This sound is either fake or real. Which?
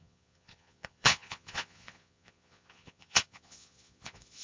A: fake